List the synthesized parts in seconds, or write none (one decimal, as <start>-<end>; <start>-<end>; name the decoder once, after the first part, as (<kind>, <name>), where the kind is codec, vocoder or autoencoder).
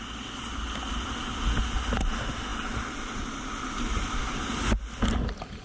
none